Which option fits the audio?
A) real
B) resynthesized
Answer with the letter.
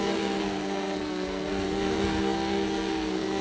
B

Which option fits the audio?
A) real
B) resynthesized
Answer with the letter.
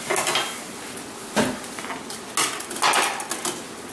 A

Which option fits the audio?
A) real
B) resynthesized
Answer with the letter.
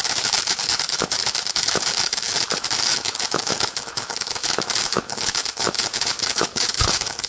B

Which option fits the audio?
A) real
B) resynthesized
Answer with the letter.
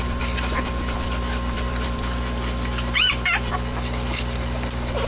B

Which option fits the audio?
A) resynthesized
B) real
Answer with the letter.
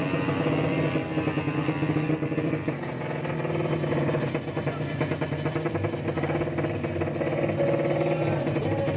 B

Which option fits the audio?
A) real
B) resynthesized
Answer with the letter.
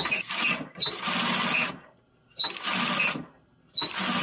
A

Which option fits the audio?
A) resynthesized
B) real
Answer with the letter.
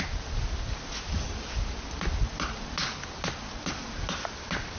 B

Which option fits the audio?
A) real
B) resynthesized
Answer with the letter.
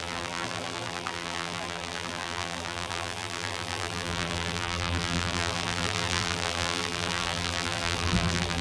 B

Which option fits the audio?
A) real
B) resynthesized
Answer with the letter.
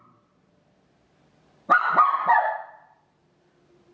A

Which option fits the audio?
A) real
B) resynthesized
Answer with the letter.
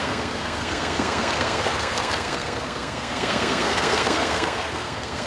B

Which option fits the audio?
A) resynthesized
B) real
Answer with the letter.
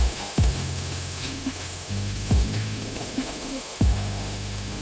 A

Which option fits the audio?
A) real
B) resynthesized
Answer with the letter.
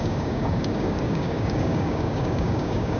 B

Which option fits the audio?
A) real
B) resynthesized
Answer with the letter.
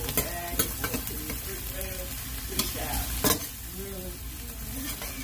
A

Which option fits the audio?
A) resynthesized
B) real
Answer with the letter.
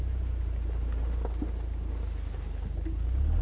B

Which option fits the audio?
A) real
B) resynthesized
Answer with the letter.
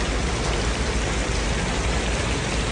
A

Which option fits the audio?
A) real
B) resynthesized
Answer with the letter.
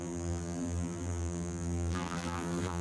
B